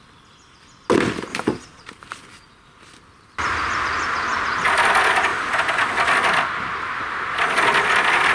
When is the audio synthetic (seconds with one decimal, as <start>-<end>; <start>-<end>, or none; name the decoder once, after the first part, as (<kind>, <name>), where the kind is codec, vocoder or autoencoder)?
1.3-1.9 (vocoder, Vocos)